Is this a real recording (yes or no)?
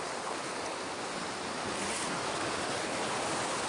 yes